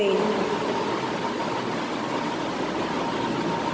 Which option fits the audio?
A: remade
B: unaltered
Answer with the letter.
B